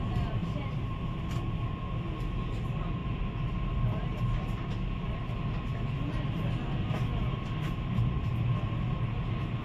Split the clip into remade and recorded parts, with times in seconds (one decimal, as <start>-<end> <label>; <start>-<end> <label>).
0.0-0.4 recorded; 0.4-1.2 remade; 1.2-9.6 recorded